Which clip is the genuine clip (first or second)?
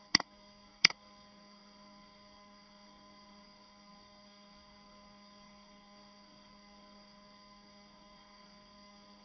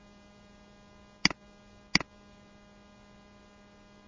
second